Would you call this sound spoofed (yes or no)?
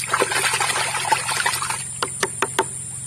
no